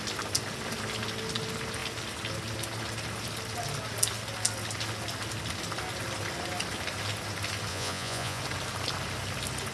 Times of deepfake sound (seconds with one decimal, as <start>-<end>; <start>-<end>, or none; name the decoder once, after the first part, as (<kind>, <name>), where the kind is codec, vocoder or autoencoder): 7.7-8.4 (vocoder, Vocos)